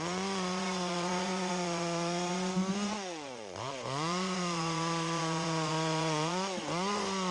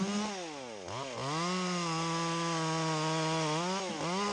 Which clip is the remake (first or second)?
first